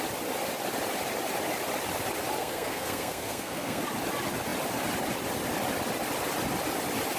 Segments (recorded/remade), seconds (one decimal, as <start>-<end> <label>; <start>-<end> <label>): 0.0-2.4 recorded; 2.4-3.8 remade; 3.8-7.2 recorded